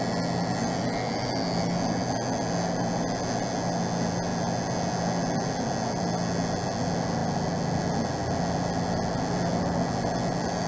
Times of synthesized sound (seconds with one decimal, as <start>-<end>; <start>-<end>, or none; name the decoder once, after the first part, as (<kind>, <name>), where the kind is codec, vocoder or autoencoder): none